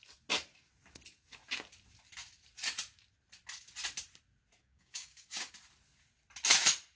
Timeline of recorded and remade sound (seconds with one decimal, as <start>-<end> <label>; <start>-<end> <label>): 0.0-4.6 recorded; 4.6-5.5 remade; 5.5-7.0 recorded

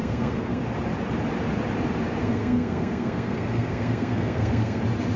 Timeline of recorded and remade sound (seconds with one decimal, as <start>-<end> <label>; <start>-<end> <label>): 0.0-0.6 remade; 0.6-2.2 recorded; 2.2-4.8 remade; 4.8-5.2 recorded

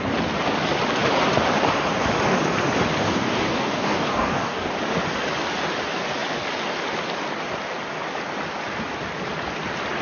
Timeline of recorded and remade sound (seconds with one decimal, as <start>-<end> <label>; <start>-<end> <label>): 0.0-3.0 recorded; 3.0-4.7 remade; 4.7-10.0 recorded

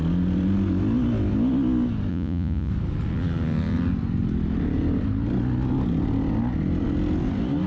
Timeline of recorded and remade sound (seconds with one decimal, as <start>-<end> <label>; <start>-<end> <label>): 0.0-2.1 recorded; 2.1-2.7 remade; 2.7-7.7 recorded

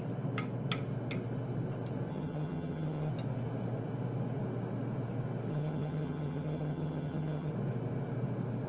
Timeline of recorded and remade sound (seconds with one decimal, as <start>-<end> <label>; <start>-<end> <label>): 0.0-2.1 recorded; 2.1-3.1 remade; 3.1-5.5 recorded; 5.5-7.5 remade; 7.5-8.7 recorded

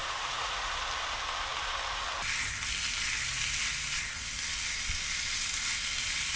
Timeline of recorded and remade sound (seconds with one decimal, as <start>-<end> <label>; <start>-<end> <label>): 0.0-0.7 remade; 0.7-6.4 recorded